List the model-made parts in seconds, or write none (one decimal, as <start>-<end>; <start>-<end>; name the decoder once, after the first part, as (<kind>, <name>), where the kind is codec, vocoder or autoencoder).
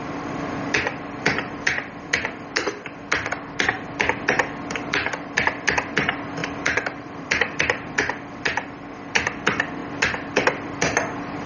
none